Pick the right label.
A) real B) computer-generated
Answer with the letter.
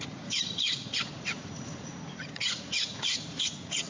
B